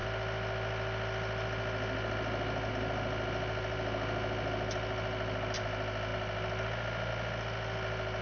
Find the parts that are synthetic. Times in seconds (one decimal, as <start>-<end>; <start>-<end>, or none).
none